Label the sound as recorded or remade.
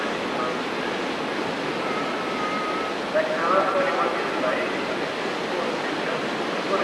recorded